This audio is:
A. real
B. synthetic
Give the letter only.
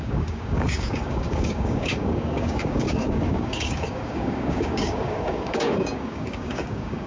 B